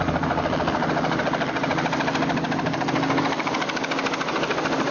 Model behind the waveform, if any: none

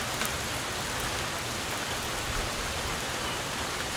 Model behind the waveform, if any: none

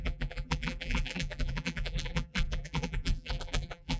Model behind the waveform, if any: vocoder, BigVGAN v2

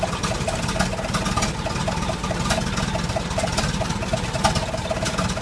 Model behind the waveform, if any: none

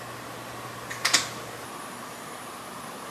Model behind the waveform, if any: none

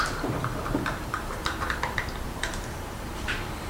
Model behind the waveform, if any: vocoder, BigVGAN v2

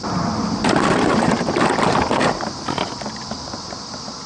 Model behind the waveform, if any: none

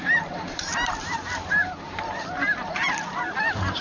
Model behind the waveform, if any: vocoder, BigVGAN v2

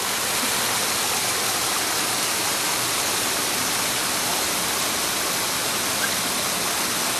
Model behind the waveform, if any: none